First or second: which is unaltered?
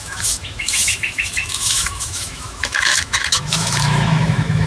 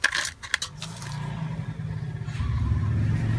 second